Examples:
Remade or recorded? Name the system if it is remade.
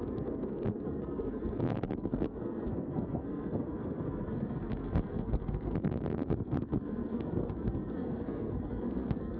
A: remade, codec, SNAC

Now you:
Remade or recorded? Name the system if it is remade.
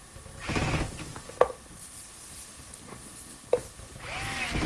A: recorded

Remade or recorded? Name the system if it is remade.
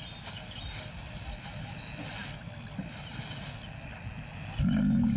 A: recorded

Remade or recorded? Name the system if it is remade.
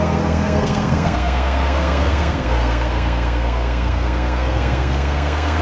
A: remade, codec, SNAC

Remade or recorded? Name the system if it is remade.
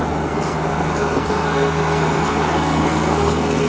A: remade, codec, SNAC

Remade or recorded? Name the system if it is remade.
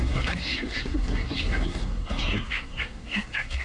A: remade, codec, SNAC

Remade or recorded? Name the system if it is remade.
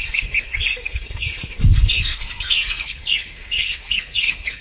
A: remade, codec, SNAC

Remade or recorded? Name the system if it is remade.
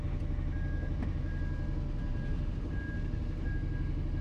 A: recorded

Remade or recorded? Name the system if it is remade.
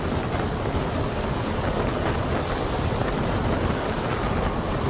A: recorded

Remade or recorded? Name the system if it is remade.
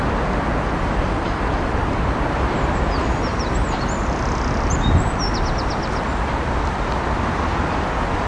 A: recorded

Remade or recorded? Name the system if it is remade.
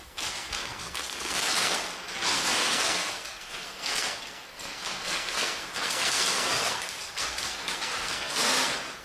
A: remade, codec, SNAC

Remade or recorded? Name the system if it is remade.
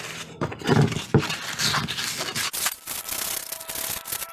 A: recorded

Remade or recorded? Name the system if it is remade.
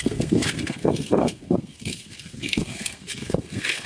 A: remade, codec, SNAC